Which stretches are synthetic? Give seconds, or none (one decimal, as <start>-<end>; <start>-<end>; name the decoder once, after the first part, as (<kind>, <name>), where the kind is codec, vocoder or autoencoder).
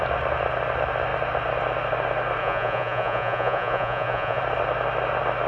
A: 2.4-4.4 (vocoder, Vocos)